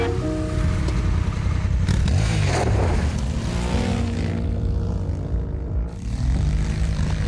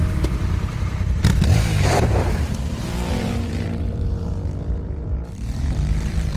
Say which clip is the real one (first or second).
first